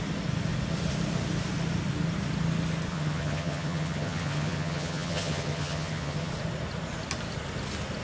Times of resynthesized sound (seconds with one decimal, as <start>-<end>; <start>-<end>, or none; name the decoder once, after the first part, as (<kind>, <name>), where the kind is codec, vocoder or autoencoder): 2.9-6.3 (vocoder, HiFi-GAN)